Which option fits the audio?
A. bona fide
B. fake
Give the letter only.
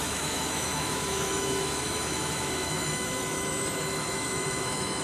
B